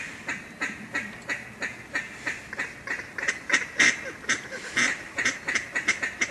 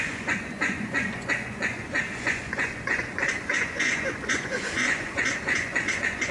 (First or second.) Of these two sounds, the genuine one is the first